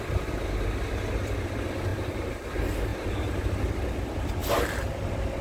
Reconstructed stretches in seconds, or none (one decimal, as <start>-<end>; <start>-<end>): 1.9-2.5; 2.9-3.6